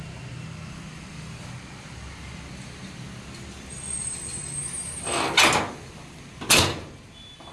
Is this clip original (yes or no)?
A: yes